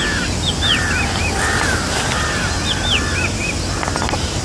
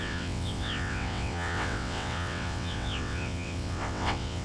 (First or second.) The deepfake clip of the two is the second